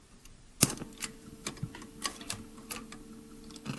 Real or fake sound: real